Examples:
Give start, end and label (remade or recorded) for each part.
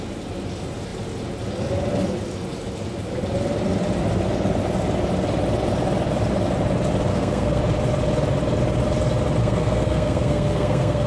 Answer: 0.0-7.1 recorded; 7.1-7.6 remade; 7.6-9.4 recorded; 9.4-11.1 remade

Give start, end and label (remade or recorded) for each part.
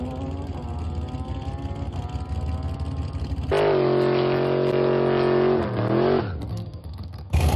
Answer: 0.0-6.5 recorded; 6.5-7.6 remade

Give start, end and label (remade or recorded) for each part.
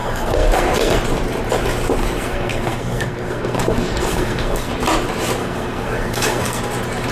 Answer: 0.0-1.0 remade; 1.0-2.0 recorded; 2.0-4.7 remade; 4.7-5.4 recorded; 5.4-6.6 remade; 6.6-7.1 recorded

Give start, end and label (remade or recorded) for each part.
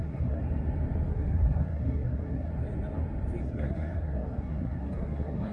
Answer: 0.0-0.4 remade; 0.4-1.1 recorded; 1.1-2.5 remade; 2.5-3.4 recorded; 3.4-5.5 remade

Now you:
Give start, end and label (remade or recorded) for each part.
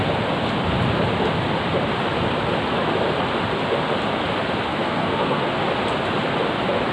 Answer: 0.0-4.7 recorded; 4.7-5.5 remade; 5.5-6.9 recorded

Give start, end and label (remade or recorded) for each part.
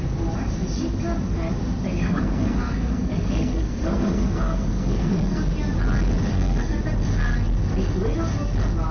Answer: 0.0-2.0 recorded; 2.0-5.4 remade; 5.4-6.3 recorded; 6.3-6.8 remade; 6.8-8.9 recorded